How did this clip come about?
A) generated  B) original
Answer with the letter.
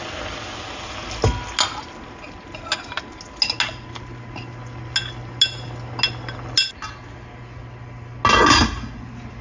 B